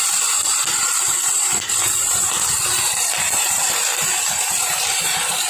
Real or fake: fake